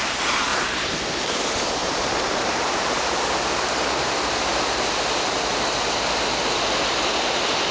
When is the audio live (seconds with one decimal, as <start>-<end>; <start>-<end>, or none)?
0.0-0.5; 1.4-1.8; 3.0-7.7